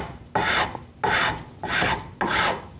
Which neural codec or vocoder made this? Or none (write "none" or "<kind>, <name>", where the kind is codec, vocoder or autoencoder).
none